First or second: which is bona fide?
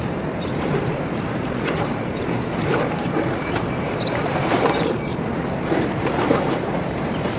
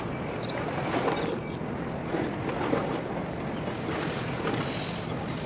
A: second